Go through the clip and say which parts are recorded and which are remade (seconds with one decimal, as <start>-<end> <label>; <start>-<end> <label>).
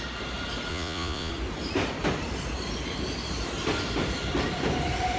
0.0-0.7 recorded; 0.7-1.3 remade; 1.3-5.2 recorded